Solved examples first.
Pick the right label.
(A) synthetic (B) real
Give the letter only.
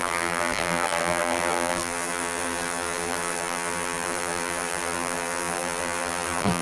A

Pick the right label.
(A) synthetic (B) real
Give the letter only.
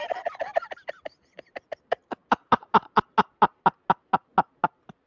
B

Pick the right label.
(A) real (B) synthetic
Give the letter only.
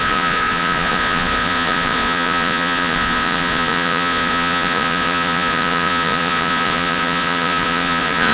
B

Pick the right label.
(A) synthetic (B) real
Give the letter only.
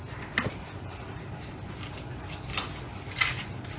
B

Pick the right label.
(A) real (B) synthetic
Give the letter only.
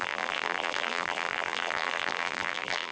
B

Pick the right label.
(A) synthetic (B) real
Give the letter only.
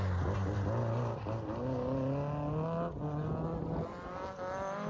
B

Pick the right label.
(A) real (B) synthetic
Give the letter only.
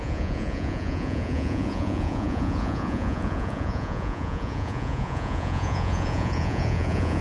B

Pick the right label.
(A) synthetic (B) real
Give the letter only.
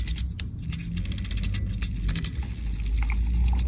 B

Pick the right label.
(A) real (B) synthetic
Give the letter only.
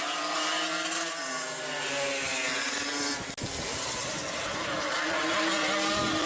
A